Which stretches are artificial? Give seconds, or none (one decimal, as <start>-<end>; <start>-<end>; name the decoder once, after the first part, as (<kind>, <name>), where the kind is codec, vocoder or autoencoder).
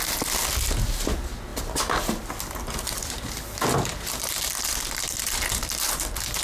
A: none